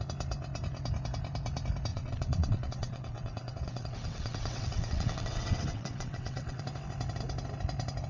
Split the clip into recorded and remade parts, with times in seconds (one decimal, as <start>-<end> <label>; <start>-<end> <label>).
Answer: 0.0-1.9 recorded; 1.9-6.6 remade; 6.6-8.1 recorded